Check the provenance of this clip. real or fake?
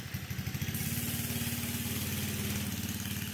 real